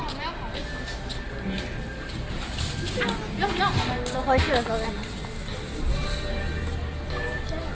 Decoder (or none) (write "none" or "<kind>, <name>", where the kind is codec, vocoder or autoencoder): none